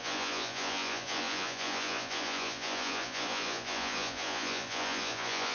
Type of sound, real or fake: fake